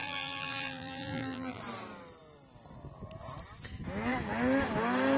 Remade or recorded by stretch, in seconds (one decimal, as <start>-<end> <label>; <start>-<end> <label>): 0.0-1.6 remade; 1.6-5.2 recorded